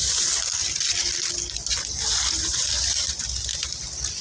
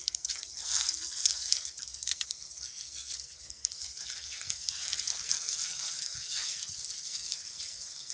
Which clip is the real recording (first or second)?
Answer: first